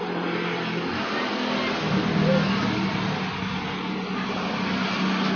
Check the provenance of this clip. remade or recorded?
recorded